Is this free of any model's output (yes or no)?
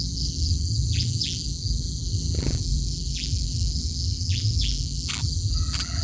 no